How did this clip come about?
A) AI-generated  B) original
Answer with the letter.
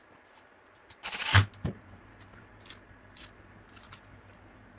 A